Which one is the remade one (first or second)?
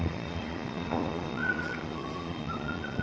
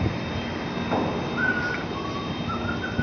first